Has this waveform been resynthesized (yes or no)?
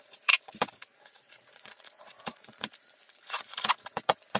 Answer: yes